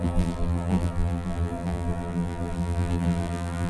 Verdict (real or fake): fake